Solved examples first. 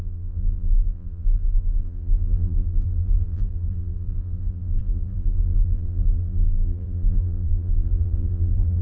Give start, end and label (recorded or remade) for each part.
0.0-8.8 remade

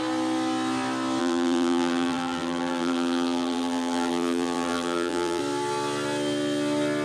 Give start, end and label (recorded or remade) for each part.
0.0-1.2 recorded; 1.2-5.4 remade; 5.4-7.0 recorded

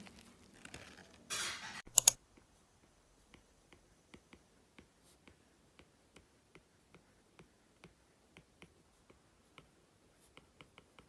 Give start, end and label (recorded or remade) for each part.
0.0-1.0 recorded; 1.0-4.5 remade; 4.5-11.1 recorded